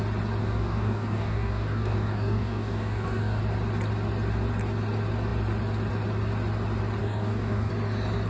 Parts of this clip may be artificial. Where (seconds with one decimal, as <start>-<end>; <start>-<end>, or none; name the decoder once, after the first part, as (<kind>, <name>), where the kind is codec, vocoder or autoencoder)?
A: 0.4-3.4 (codec, DAC); 7.0-7.7